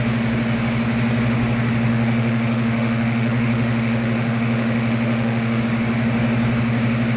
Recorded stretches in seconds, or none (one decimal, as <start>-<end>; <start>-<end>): 0.0-1.9; 5.6-7.2